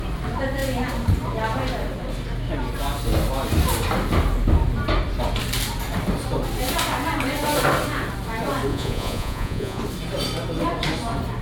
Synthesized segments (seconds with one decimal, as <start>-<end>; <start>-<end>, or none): 8.7-9.8